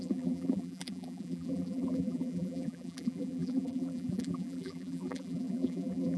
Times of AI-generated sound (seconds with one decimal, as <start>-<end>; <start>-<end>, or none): 0.0-6.2